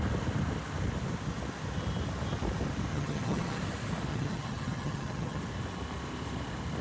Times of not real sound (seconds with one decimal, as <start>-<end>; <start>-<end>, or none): 2.9-3.6; 4.1-5.4